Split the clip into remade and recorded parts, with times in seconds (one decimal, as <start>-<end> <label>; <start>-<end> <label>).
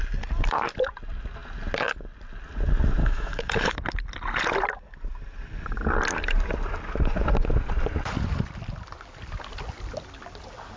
0.0-3.0 recorded; 3.0-3.7 remade; 3.7-10.8 recorded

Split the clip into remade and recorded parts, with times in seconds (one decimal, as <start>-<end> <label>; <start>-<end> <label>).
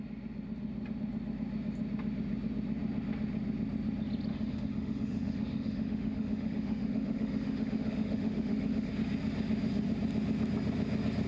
0.0-4.3 recorded; 4.3-8.9 remade; 8.9-11.3 recorded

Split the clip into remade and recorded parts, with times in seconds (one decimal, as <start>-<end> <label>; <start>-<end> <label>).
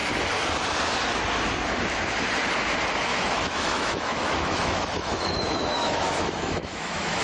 0.0-3.1 recorded; 3.1-7.2 remade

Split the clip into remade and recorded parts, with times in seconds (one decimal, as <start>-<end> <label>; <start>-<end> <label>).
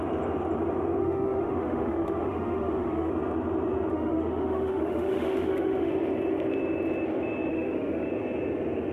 0.0-1.0 recorded; 1.0-3.1 remade; 3.1-3.9 recorded; 3.9-5.9 remade; 5.9-7.5 recorded; 7.5-8.1 remade; 8.1-8.9 recorded